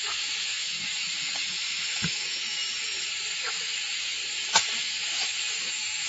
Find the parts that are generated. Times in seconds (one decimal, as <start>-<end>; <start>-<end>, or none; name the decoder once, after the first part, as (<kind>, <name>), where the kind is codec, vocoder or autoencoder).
0.0-2.6 (autoencoder, DAC-VAE); 3.5-4.2; 4.8-6.1